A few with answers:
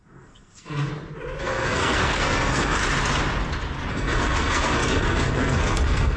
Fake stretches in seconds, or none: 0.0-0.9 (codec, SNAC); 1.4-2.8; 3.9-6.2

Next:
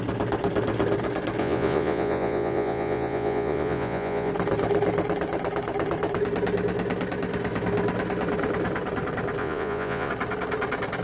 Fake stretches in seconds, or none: 1.4-4.3 (vocoder, Vocos); 9.4-10.1